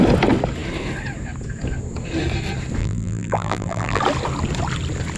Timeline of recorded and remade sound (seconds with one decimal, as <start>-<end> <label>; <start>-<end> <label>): 0.0-2.8 recorded; 2.8-4.0 remade; 4.0-5.2 recorded